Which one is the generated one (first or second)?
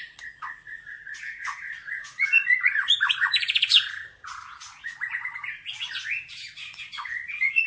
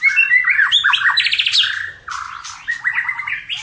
first